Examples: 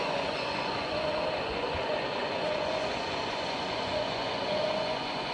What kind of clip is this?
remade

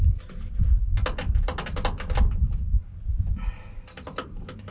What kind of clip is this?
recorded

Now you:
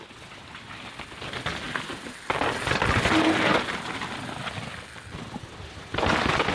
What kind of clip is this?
recorded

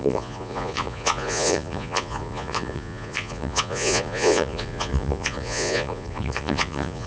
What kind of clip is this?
remade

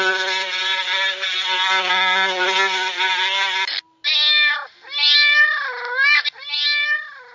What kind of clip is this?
recorded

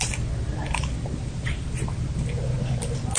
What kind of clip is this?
recorded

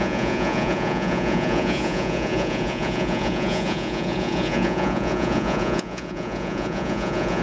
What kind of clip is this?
remade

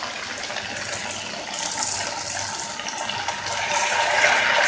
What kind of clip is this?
recorded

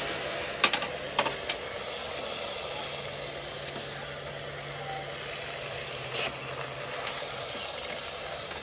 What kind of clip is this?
recorded